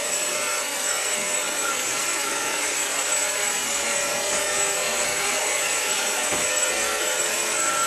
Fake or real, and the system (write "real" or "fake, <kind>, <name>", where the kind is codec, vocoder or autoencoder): fake, codec, SNAC